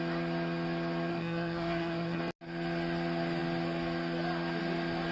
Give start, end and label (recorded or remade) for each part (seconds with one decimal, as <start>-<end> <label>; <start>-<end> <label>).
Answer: 0.0-1.1 recorded; 1.1-2.2 remade; 2.2-5.1 recorded